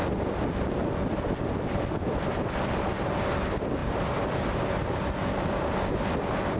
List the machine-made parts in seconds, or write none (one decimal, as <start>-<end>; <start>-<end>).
none

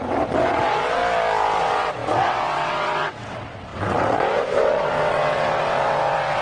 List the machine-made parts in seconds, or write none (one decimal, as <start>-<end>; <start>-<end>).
0.0-1.0; 1.6-6.4

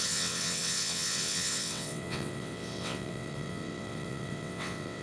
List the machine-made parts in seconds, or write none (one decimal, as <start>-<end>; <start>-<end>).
0.0-5.0

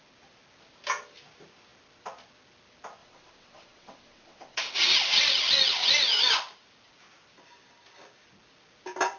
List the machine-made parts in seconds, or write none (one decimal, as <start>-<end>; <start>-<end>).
3.0-4.6

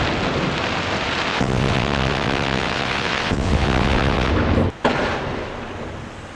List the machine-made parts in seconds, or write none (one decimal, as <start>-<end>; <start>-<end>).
1.3-4.3

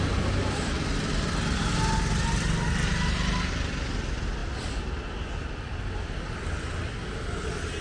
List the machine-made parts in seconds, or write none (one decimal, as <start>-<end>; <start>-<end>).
none

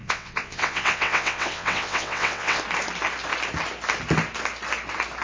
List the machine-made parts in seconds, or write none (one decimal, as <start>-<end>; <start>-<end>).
0.0-2.6